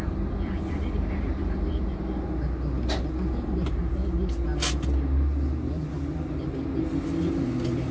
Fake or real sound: real